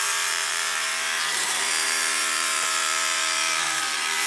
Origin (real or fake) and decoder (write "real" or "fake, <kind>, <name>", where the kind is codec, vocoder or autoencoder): fake, vocoder, BigVGAN v2